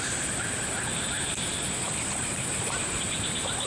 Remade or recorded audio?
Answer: remade